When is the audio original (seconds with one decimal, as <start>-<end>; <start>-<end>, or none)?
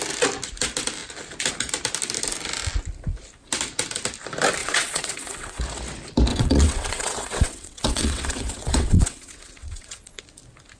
0.0-4.6; 5.6-6.3; 10.2-10.8